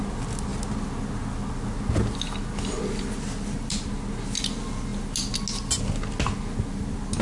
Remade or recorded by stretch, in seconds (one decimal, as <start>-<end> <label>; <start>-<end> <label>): 0.0-7.2 recorded